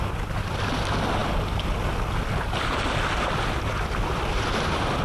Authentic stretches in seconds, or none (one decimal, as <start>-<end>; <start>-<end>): 0.0-5.0